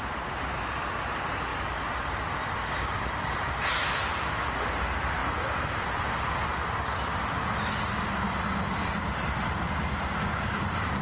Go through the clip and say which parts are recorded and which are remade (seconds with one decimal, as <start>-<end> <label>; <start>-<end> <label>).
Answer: 0.0-5.2 recorded; 5.2-6.5 remade; 6.5-11.0 recorded